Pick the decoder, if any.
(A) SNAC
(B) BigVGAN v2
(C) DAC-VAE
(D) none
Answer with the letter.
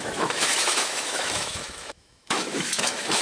C